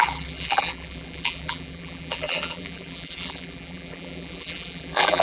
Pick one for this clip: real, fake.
fake